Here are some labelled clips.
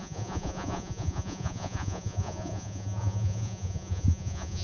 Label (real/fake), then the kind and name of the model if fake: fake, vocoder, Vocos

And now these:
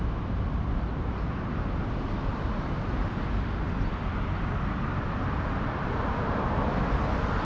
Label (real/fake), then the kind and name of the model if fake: real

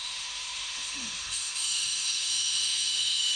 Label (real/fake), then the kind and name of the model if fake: fake, autoencoder, DAC-VAE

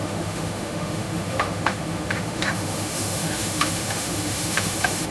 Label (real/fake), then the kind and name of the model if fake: fake, autoencoder, DAC-VAE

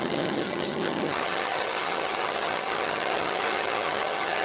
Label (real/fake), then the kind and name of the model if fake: fake, vocoder, HiFi-GAN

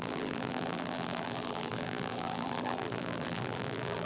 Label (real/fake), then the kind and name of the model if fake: fake, vocoder, BigVGAN v2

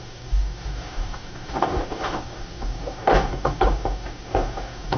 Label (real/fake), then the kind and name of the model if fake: fake, codec, DAC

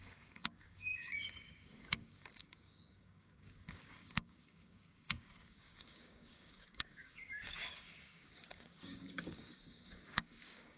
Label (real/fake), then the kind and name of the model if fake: fake, codec, DAC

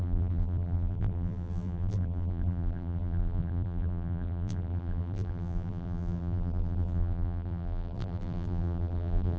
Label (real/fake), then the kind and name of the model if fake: fake, vocoder, BigVGAN v2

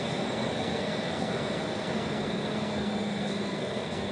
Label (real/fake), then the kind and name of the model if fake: fake, codec, SNAC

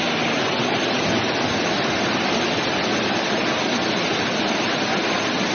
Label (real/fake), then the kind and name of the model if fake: real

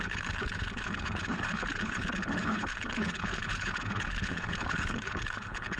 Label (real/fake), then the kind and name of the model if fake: fake, codec, HILCodec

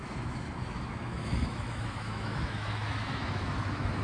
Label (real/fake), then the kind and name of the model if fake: fake, autoencoder, DAC-VAE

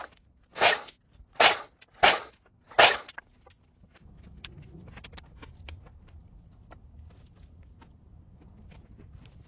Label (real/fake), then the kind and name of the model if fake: real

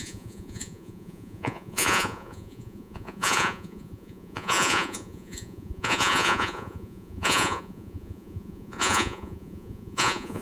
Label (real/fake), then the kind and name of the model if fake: fake, vocoder, Vocos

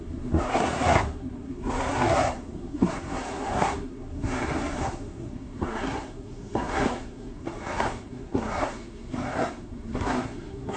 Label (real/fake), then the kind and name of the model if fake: fake, codec, SNAC